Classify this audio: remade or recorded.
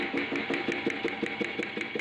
recorded